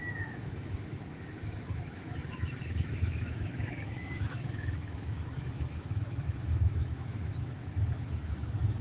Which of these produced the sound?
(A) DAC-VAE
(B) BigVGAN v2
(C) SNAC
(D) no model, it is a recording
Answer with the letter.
A